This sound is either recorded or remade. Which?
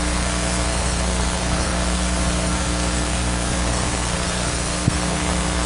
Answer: remade